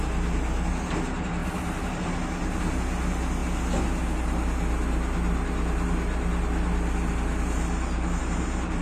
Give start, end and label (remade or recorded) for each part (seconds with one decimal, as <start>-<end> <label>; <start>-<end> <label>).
0.0-8.8 recorded